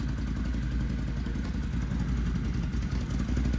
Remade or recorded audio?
recorded